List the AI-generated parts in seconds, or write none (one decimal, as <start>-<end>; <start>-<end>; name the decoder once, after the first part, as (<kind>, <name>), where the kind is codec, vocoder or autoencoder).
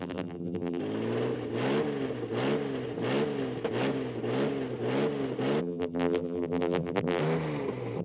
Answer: 0.0-0.8 (vocoder, BigVGAN v2); 5.6-7.2